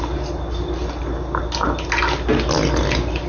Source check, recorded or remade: recorded